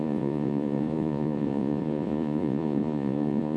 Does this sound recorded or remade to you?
remade